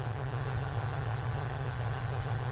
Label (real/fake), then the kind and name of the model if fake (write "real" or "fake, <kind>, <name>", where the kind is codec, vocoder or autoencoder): fake, vocoder, HiFi-GAN